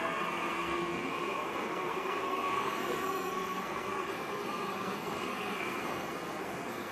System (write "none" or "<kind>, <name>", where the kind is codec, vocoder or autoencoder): codec, SNAC